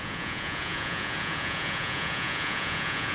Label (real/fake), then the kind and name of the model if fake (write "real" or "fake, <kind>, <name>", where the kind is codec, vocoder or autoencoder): fake, vocoder, Vocos